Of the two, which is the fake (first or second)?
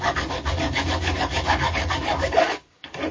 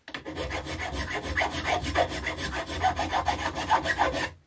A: first